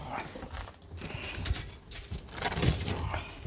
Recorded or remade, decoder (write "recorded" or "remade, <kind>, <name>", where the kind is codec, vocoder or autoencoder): recorded